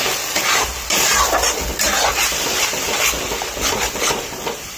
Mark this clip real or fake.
real